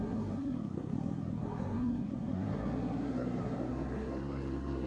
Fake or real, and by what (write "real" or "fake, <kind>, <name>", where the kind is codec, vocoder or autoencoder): fake, codec, SNAC